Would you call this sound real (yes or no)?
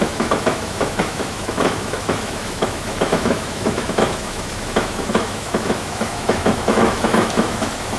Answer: no